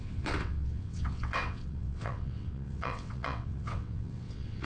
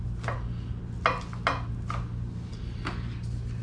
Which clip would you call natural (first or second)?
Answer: second